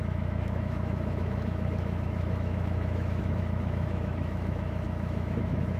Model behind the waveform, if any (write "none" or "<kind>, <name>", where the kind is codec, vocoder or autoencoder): autoencoder, DAC-VAE